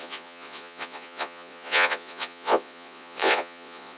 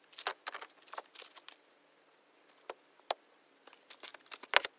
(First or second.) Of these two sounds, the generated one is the first